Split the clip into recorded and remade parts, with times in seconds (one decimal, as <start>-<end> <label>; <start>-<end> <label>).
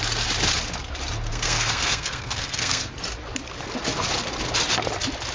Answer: 0.0-1.3 recorded; 1.3-2.9 remade; 2.9-5.3 recorded